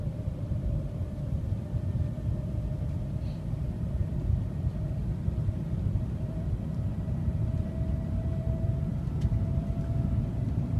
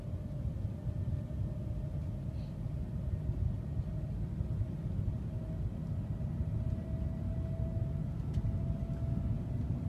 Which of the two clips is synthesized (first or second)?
first